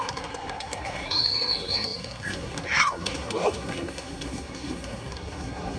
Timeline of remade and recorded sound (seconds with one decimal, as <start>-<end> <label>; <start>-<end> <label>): 0.0-5.8 remade